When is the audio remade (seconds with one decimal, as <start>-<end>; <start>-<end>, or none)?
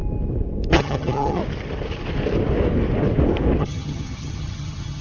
0.7-1.4; 3.6-5.0